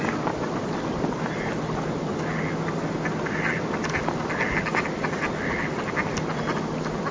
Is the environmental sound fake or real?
real